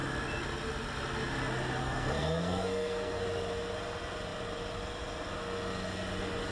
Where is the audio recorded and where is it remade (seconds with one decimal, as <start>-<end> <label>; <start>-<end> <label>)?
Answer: 0.0-1.8 recorded; 1.8-3.2 remade; 3.2-6.5 recorded